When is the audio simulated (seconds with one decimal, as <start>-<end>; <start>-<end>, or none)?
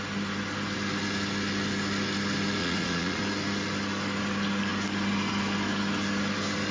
2.6-3.2